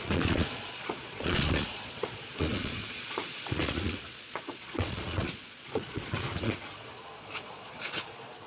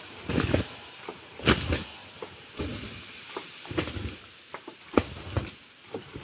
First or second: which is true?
second